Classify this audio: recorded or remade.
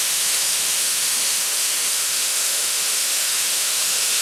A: remade